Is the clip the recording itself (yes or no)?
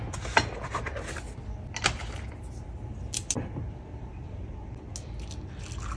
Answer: yes